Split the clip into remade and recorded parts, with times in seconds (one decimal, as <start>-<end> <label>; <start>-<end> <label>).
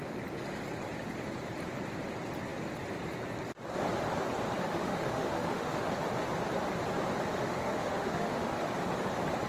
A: 0.0-4.6 recorded; 4.6-5.9 remade; 5.9-7.3 recorded; 7.3-8.7 remade; 8.7-9.5 recorded